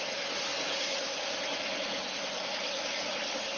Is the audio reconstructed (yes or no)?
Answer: no